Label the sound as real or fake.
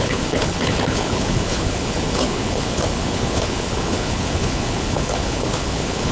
fake